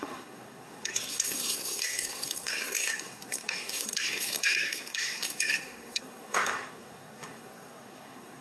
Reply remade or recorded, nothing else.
remade